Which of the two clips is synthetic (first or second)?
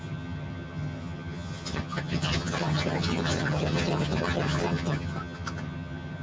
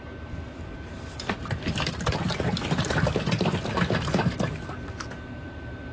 first